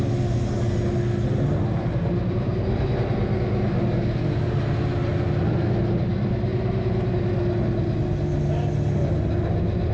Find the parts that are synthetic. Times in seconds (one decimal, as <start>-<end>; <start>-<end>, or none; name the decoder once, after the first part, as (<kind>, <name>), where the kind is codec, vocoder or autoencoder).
none

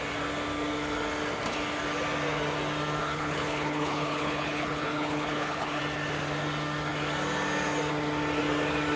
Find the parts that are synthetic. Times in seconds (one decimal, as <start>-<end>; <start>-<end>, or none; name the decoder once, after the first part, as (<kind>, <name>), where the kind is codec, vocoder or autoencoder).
3.0-5.8 (codec, HILCodec)

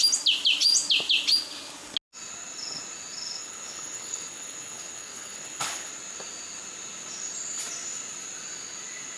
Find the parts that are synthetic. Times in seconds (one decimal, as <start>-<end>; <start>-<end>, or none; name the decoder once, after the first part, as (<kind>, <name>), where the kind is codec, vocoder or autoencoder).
3.4-5.9 (codec, HILCodec)

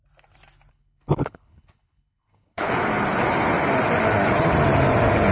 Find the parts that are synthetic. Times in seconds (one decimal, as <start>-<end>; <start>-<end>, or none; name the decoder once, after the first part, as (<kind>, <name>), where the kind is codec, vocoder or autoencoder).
0.7-2.7 (codec, HILCodec)